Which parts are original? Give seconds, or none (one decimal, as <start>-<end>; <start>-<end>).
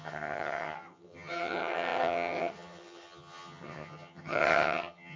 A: none